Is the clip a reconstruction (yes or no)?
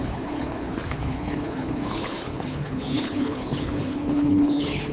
yes